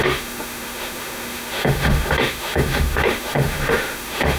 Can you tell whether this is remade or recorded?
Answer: remade